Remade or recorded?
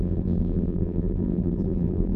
remade